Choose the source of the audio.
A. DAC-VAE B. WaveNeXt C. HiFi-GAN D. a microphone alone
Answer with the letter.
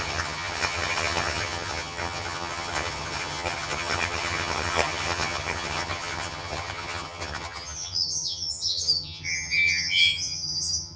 C